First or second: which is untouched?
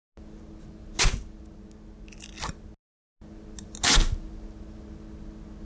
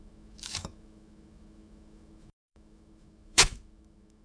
first